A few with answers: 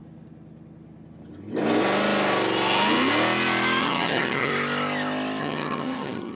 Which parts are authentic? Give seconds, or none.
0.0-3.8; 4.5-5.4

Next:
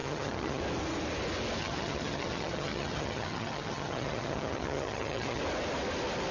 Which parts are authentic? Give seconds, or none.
0.6-1.6; 5.4-6.3

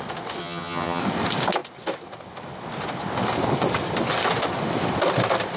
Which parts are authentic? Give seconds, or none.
0.0-0.4; 1.0-5.6

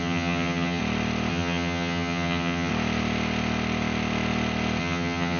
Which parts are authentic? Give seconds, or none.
0.8-1.3; 2.7-4.8

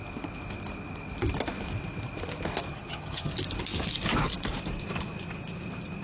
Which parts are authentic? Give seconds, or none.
0.0-2.7; 3.3-6.0

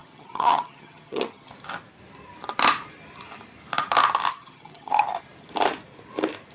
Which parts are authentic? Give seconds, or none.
1.5-4.3; 4.9-6.5

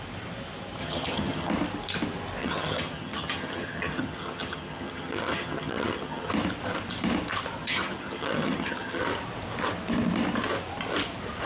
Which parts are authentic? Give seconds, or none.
0.0-0.8; 1.5-2.4; 6.3-7.6; 9.0-11.5

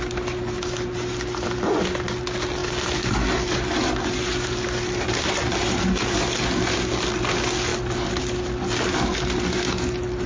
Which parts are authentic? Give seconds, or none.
0.0-10.3